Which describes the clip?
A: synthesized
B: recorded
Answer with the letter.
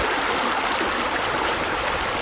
B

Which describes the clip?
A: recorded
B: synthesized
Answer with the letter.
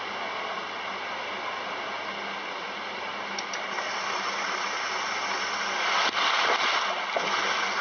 A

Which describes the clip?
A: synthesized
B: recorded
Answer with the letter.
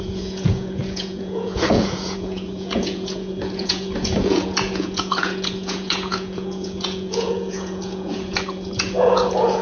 A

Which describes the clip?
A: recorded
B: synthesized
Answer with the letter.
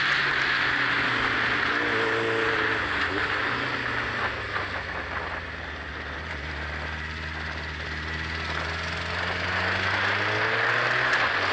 A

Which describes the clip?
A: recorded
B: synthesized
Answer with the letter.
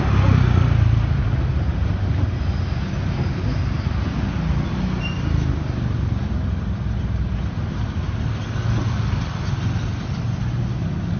A